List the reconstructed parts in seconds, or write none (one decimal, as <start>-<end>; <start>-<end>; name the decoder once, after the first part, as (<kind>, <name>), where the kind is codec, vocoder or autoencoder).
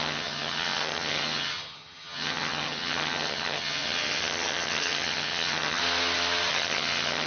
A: 0.0-5.8 (vocoder, HiFi-GAN); 6.5-7.3